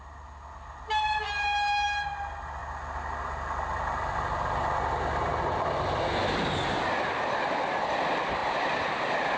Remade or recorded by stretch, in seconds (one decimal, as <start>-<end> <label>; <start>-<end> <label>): 0.0-9.4 recorded